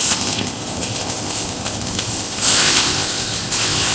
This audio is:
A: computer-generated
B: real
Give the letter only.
A